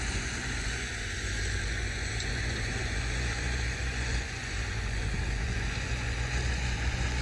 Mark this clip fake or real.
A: fake